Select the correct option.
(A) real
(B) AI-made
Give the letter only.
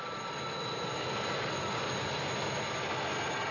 A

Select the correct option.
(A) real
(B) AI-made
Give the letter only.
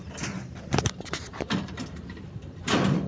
B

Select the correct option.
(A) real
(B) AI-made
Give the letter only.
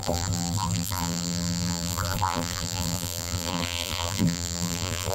B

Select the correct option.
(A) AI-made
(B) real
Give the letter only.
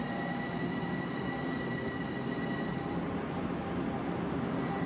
B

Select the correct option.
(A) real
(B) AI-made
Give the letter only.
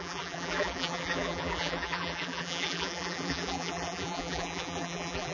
B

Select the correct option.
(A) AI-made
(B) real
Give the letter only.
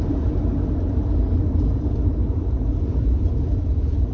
B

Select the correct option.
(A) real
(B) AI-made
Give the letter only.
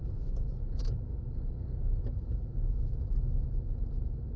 A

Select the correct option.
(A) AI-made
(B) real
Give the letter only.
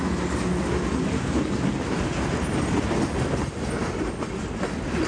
B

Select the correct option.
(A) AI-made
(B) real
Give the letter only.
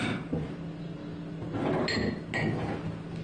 B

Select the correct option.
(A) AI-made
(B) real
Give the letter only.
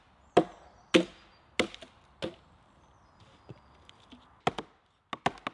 B